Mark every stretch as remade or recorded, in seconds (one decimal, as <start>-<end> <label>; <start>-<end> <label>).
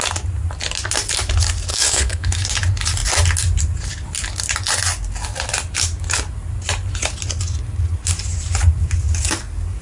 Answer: 0.0-1.7 recorded; 1.7-2.4 remade; 2.4-9.8 recorded